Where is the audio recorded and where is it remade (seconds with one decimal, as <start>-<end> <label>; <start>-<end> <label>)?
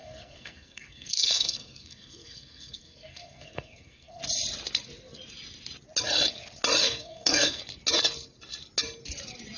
0.0-4.2 remade; 4.2-6.8 recorded; 6.8-7.6 remade; 7.6-9.6 recorded